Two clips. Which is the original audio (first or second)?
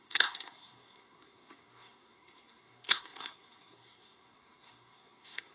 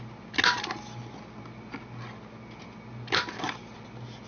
second